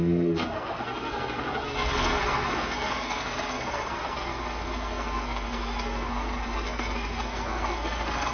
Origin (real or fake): fake